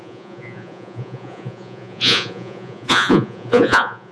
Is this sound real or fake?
fake